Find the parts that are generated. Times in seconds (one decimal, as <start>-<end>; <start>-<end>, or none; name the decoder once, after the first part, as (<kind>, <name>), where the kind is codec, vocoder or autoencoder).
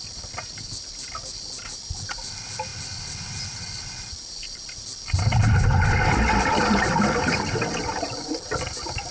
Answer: none